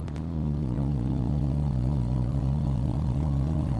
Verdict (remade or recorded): remade